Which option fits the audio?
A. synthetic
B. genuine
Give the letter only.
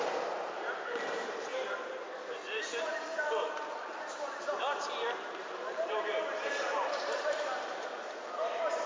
A